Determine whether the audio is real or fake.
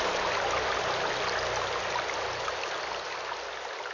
real